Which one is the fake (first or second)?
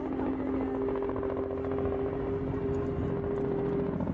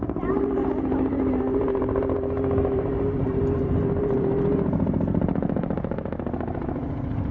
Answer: second